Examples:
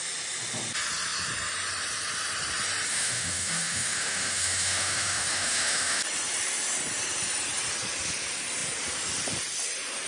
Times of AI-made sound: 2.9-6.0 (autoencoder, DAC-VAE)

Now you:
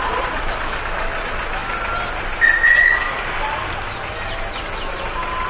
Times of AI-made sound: none

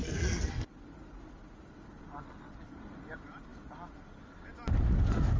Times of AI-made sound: none

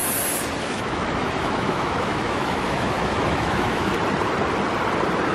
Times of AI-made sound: 0.6-3.9 (autoencoder, DAC-VAE)